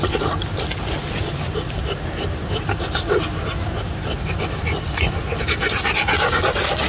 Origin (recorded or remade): recorded